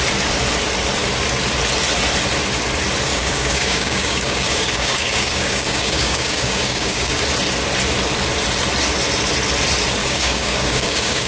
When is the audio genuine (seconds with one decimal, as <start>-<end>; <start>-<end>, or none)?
0.0-3.1; 7.2-10.0